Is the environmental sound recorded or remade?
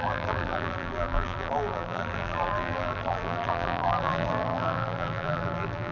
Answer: remade